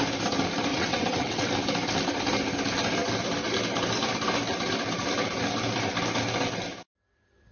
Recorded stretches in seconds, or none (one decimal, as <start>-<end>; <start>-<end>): 0.0-0.7; 1.5-7.5